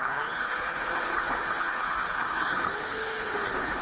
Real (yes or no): no